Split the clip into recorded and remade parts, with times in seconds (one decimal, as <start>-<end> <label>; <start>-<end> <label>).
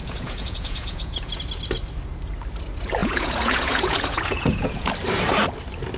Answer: 0.0-1.4 remade; 1.4-3.0 recorded; 3.0-4.9 remade; 4.9-6.0 recorded